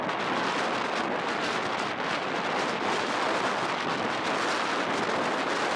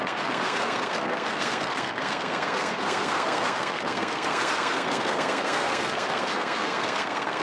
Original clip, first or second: first